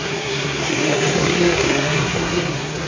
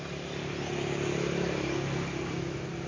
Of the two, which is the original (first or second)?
second